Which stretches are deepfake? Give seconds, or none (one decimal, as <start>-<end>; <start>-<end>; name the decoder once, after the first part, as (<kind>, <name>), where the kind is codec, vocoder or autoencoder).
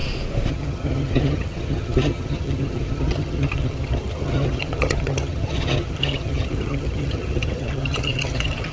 0.5-8.7 (vocoder, HiFi-GAN)